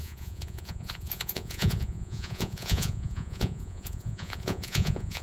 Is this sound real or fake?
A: fake